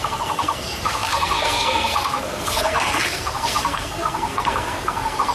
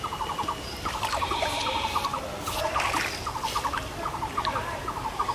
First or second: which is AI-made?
first